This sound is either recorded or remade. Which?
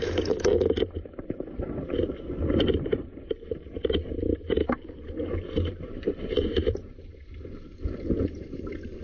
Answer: remade